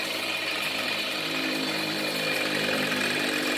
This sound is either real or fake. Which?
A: fake